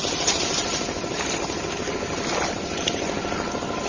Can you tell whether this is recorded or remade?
recorded